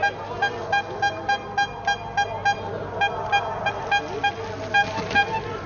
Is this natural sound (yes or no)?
yes